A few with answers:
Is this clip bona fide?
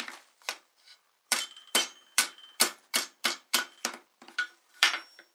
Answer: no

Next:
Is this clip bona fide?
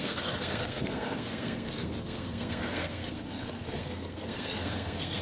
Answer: no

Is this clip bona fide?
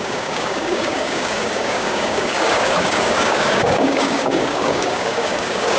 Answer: no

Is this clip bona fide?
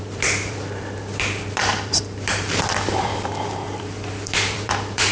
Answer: no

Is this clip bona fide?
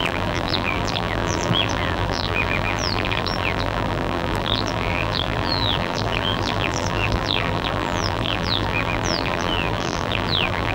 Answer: no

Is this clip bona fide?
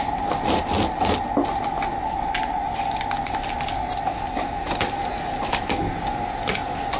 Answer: yes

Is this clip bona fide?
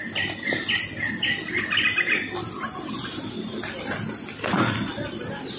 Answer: yes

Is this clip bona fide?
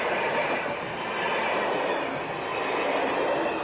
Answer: yes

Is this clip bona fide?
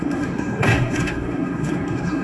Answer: no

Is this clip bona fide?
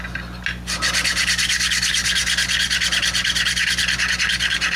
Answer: yes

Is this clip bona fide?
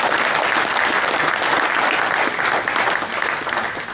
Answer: yes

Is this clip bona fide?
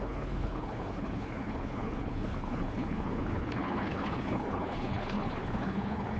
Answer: no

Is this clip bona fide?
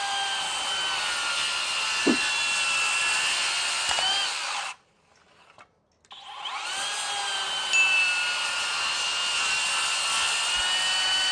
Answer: yes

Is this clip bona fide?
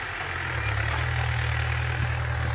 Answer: yes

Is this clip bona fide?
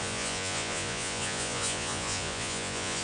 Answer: no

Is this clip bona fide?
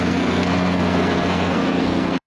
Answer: no